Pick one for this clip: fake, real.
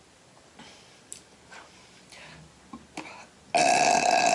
real